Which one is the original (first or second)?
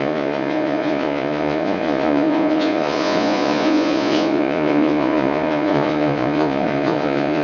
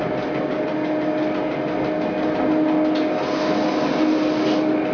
second